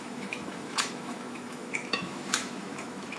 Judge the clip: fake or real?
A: fake